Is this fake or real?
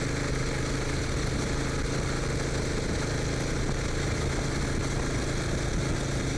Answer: real